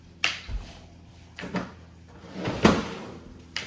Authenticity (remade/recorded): recorded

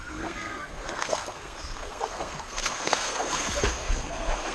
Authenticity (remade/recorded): remade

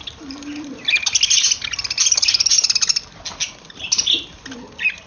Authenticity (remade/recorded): recorded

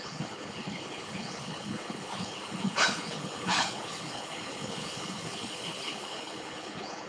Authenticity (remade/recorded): remade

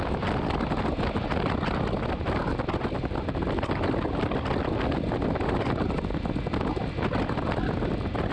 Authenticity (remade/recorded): recorded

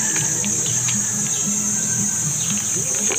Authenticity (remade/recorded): recorded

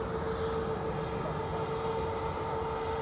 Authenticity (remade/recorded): recorded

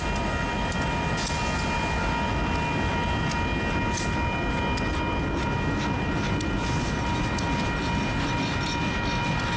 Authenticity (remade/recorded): recorded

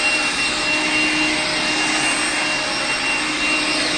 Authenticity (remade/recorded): recorded